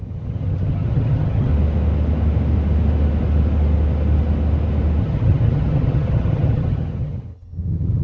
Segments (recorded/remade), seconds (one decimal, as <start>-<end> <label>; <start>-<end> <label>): 0.0-1.5 remade; 1.5-5.0 recorded; 5.0-8.0 remade